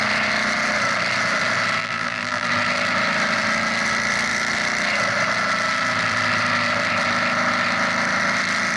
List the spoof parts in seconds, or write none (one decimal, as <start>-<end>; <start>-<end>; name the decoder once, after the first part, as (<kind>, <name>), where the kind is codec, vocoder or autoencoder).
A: 1.8-2.5 (vocoder, BigVGAN v2)